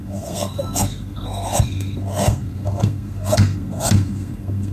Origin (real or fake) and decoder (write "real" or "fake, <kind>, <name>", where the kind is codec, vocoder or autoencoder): fake, codec, SNAC